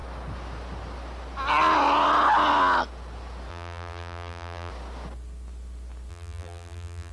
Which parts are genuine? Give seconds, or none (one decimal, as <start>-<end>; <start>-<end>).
0.0-3.5; 4.7-6.1